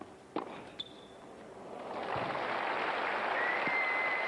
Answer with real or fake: real